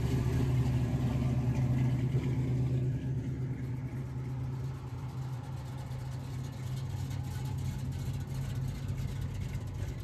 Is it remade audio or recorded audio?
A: recorded